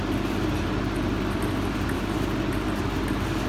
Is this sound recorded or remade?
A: recorded